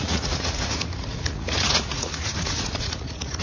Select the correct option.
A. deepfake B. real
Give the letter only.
A